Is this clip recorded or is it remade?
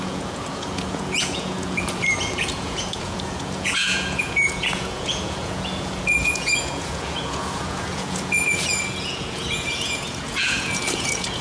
remade